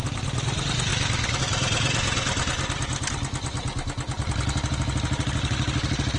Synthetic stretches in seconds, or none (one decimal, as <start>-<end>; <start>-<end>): none